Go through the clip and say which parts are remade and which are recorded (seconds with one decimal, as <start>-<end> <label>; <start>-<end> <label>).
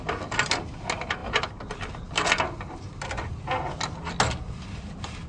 0.0-1.2 recorded; 1.2-3.0 remade; 3.0-5.3 recorded